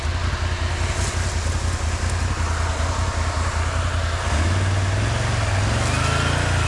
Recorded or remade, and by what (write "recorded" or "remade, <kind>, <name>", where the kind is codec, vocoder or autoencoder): recorded